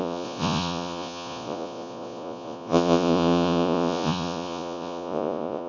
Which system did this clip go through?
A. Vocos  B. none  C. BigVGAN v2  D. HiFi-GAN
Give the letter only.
A